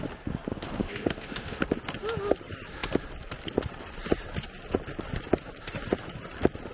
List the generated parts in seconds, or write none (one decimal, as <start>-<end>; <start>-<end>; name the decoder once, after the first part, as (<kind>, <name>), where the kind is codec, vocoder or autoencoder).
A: 0.8-1.6 (autoencoder, DAC-VAE)